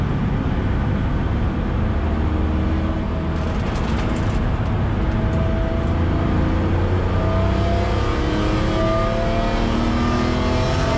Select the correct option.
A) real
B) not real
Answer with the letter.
A